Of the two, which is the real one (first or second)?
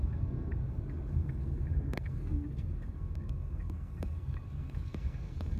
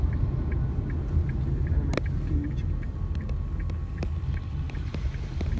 second